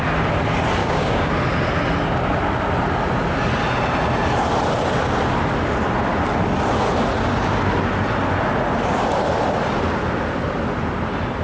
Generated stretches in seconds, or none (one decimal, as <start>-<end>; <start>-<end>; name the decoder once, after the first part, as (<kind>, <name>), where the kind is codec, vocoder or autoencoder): 0.8-1.3 (codec, DAC)